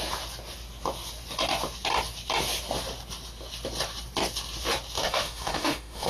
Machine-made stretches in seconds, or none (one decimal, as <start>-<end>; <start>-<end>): 5.0-6.1